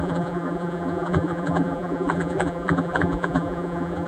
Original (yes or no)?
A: no